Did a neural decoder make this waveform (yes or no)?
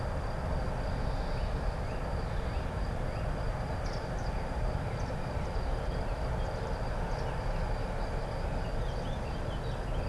no